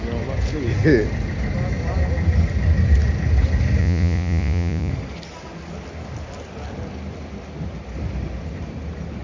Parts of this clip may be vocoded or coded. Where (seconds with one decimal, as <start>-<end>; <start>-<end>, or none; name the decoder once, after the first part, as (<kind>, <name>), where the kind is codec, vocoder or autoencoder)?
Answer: 3.8-4.9 (vocoder, Vocos)